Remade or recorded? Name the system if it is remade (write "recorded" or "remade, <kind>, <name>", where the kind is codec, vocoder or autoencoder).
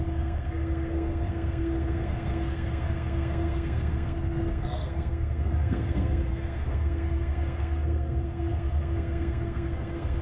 remade, codec, SNAC